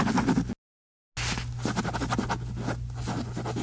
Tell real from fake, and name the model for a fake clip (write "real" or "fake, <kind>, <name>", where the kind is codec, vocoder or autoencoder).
real